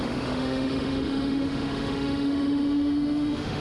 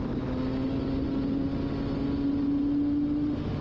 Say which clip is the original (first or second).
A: second